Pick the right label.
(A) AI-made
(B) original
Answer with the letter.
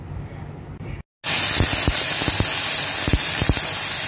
B